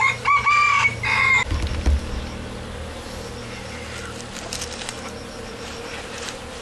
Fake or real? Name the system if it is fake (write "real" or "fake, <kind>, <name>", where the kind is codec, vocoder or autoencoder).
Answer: real